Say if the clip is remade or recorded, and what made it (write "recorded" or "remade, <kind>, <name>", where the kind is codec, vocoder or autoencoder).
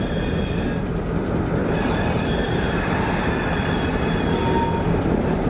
recorded